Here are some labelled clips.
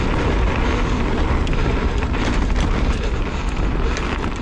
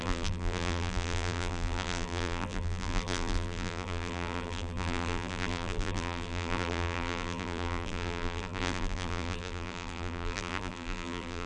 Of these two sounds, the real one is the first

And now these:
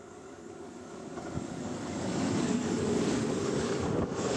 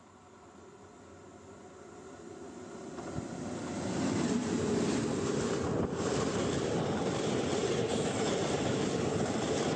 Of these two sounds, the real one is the second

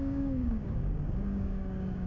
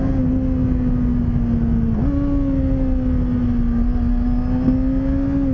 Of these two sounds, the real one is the second